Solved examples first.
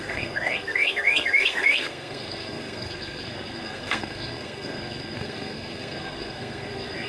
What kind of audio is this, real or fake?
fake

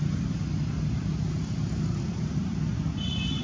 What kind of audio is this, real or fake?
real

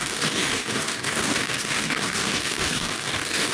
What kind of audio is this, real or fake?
fake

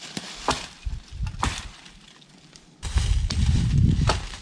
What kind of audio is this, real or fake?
real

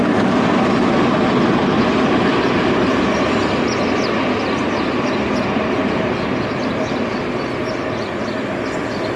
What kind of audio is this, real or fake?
real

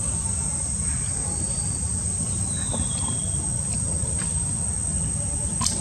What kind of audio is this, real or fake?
real